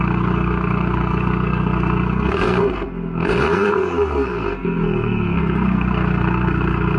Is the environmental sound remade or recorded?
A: remade